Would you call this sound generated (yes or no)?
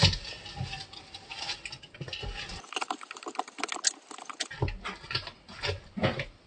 no